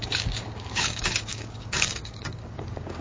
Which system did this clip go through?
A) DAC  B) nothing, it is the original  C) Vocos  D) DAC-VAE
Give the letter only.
A